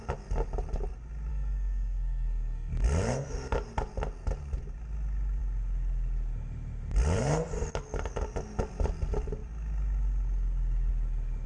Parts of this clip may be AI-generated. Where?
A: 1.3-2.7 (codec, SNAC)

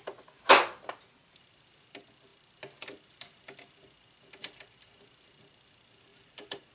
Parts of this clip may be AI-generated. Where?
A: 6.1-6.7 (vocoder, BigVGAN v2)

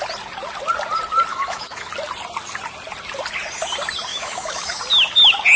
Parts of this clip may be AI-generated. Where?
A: 1.3-1.9 (autoencoder, DAC-VAE); 4.1-4.8

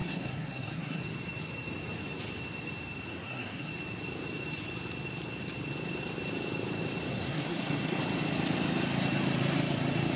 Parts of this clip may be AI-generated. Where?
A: 0.0-1.0 (codec, SNAC); 3.1-3.7; 7.1-8.0

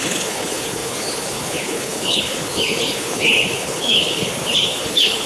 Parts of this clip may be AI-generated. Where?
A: 0.0-5.3 (codec, HILCodec)